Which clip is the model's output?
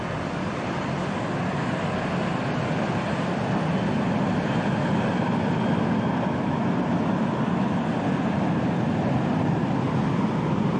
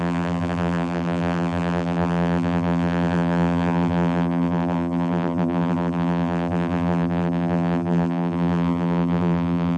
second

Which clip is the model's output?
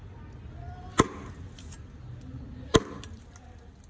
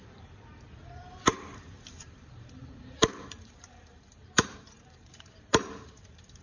second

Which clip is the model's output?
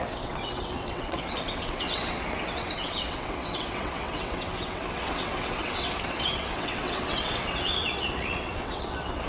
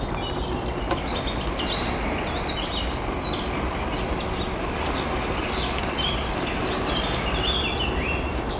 first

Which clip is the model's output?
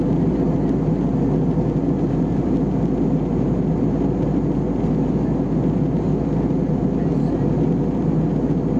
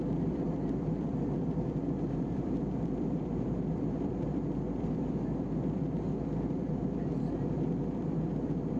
second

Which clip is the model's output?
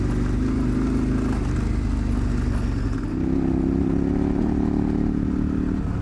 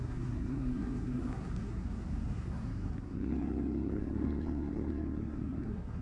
second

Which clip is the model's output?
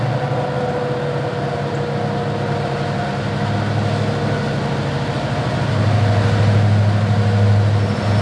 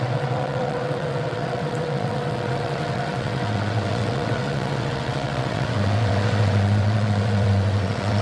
second